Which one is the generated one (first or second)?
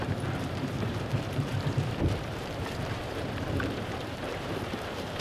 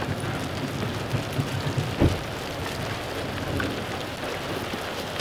first